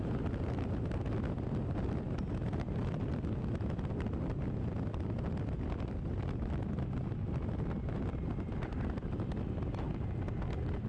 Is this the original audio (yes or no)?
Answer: yes